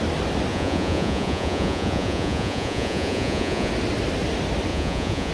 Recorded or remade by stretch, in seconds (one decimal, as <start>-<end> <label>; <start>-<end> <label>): 0.0-0.5 recorded; 0.5-3.7 remade; 3.7-4.7 recorded; 4.7-5.3 remade